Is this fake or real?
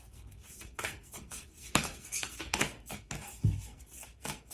fake